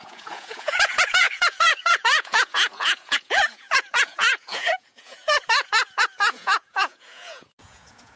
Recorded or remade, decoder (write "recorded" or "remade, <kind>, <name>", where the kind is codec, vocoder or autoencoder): remade, vocoder, Vocos